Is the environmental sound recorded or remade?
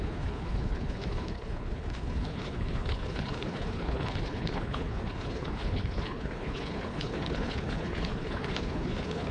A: remade